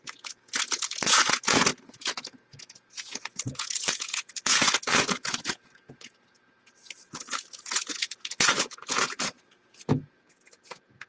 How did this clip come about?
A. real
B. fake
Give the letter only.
B